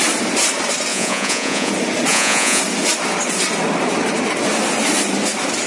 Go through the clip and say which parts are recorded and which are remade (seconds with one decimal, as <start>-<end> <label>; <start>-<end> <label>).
0.0-0.9 recorded; 0.9-1.7 remade; 1.7-2.1 recorded; 2.1-2.6 remade; 2.6-5.7 recorded